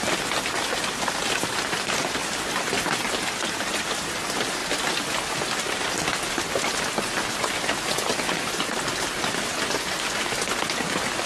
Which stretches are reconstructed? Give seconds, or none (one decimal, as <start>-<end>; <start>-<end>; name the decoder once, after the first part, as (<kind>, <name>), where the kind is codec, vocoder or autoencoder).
none